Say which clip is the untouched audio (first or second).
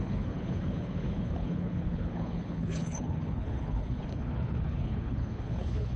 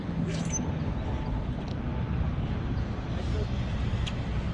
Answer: second